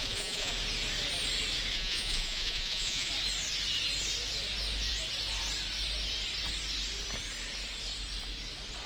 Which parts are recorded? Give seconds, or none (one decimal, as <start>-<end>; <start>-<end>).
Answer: 0.5-1.7; 3.1-8.9

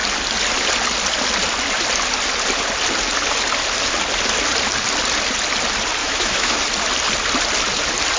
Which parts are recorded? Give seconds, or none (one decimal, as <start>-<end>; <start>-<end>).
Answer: 0.0-6.0; 6.6-8.2

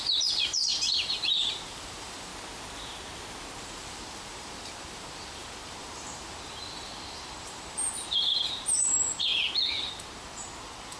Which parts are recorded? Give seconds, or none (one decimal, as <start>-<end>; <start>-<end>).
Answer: 2.3-3.6; 9.3-9.8

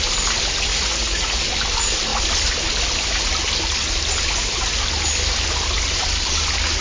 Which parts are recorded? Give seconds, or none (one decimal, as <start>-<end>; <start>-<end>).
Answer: 0.0-0.7; 1.4-6.8

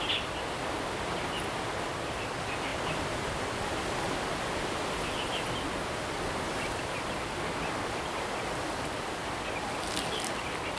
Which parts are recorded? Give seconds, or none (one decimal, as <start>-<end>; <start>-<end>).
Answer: 0.0-10.8

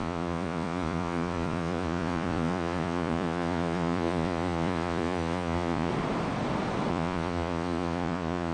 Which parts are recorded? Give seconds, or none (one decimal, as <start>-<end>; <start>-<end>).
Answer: 5.9-6.9